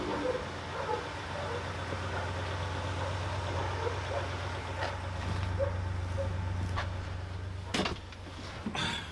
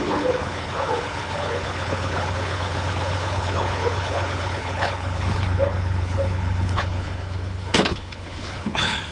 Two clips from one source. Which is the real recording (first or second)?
first